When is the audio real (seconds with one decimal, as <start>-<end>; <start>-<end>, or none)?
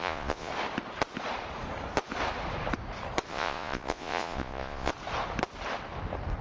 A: 0.5-3.3; 4.9-6.4